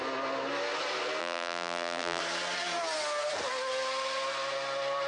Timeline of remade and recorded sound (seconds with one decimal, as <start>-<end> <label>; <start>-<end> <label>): 0.0-1.2 recorded; 1.2-2.2 remade; 2.2-5.1 recorded